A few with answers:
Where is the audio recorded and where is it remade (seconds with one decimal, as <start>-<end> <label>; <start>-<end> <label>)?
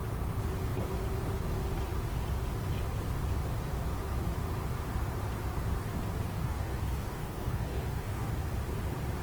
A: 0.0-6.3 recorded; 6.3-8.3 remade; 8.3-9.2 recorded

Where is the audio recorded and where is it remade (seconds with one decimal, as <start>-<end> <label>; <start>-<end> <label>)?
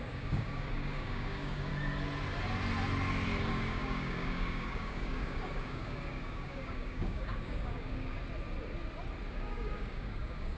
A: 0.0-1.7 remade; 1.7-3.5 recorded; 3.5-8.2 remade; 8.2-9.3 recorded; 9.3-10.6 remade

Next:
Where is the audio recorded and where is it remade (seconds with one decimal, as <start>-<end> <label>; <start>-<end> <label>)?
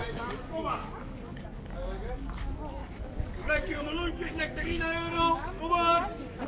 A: 0.0-2.4 remade; 2.4-2.8 recorded; 2.8-5.6 remade; 5.6-6.5 recorded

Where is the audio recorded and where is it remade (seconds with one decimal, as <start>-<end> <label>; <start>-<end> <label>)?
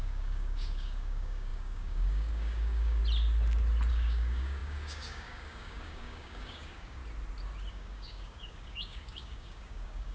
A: 0.0-3.0 remade; 3.0-3.9 recorded; 3.9-7.0 remade; 7.0-7.7 recorded; 7.7-10.1 remade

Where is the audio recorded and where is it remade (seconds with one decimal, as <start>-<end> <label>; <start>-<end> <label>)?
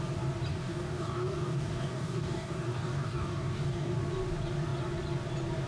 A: 0.0-0.5 recorded; 0.5-3.9 remade; 3.9-5.7 recorded